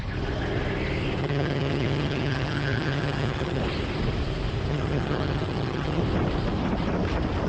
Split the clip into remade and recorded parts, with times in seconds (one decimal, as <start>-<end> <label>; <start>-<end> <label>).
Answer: 0.0-1.2 recorded; 1.2-3.6 remade; 3.6-4.7 recorded; 4.7-6.0 remade; 6.0-7.5 recorded